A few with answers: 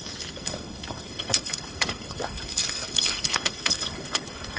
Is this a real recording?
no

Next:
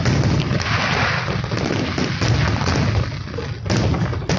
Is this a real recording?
yes